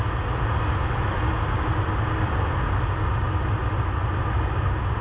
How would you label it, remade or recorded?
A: recorded